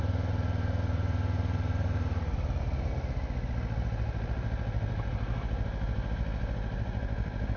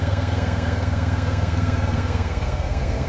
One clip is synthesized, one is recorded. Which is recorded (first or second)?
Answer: first